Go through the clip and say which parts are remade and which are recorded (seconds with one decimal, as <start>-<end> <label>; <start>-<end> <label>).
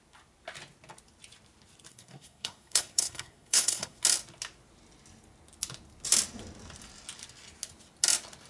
0.0-1.9 recorded; 1.9-4.0 remade; 4.0-8.5 recorded